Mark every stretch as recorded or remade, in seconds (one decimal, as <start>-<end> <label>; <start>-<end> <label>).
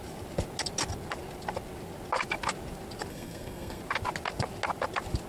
0.0-3.1 recorded; 3.1-3.8 remade; 3.8-5.3 recorded